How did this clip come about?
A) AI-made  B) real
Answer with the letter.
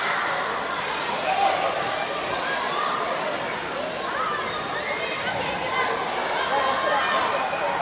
B